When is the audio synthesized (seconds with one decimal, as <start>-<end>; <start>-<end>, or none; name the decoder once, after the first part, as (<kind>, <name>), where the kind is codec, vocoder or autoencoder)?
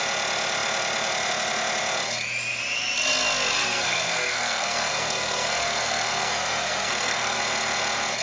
3.6-7.4 (codec, SNAC)